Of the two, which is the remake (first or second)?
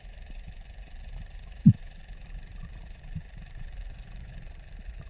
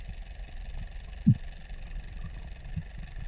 first